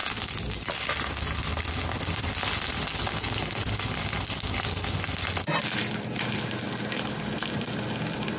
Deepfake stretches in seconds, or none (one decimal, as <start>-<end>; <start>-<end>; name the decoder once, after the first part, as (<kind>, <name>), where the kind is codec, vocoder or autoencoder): none